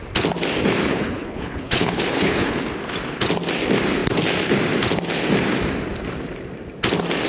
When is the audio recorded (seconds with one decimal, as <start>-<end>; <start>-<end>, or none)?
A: 0.0-0.9; 2.6-7.3